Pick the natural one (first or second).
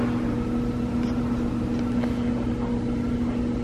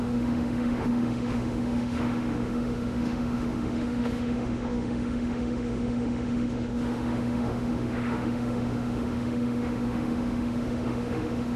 first